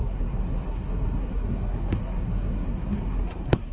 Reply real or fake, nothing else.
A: fake